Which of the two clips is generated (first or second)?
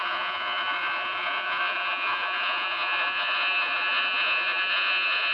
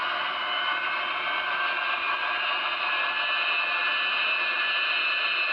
first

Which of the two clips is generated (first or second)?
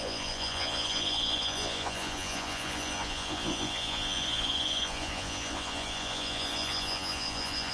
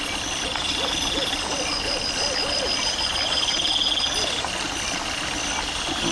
first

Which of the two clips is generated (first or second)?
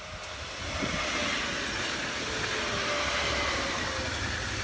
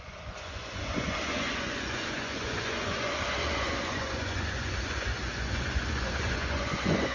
second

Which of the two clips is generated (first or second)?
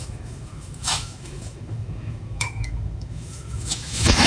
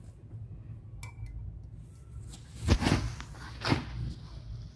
first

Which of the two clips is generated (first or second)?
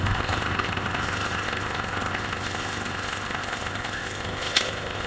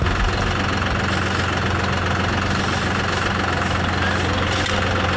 first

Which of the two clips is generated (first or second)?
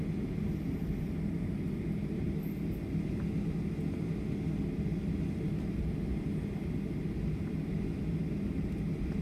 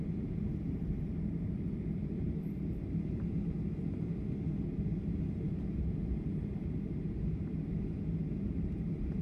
second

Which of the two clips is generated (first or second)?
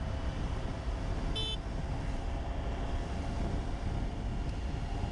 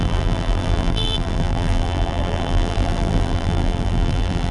second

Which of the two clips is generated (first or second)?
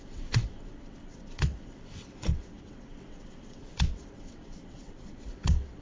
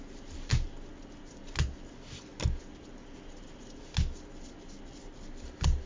first